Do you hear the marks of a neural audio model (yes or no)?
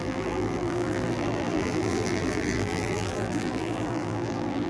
yes